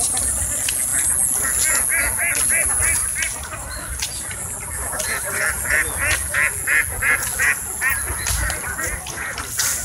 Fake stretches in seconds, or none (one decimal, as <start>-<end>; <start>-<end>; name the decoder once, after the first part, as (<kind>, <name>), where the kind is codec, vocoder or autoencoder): none